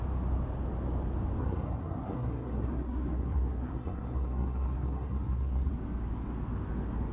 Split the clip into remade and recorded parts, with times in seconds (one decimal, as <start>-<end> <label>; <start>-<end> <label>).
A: 0.0-1.4 recorded; 1.4-5.7 remade; 5.7-7.1 recorded